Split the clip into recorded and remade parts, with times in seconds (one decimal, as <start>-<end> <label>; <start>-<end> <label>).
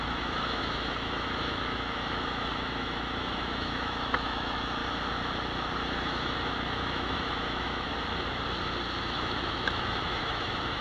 0.0-4.8 remade; 4.8-6.0 recorded; 6.0-7.9 remade; 7.9-9.0 recorded; 9.0-10.8 remade